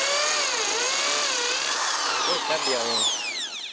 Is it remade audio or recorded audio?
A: recorded